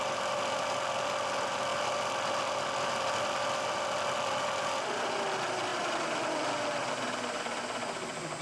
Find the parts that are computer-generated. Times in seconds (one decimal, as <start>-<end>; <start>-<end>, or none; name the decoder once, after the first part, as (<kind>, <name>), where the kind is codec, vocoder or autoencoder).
none